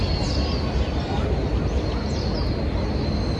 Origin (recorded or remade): recorded